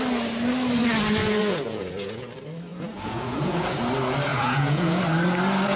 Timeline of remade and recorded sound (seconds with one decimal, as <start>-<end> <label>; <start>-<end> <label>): 0.0-1.2 recorded; 1.2-2.2 remade; 2.2-2.7 recorded; 2.7-3.8 remade; 3.8-4.3 recorded; 4.3-5.0 remade; 5.0-5.8 recorded